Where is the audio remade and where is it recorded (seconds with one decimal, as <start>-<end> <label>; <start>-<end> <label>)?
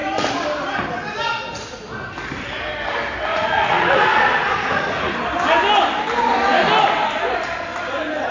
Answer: 0.0-3.3 recorded; 3.3-5.1 remade; 5.1-8.3 recorded